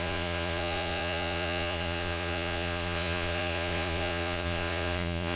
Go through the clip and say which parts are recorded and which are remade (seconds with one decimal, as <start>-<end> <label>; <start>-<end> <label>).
0.0-5.4 remade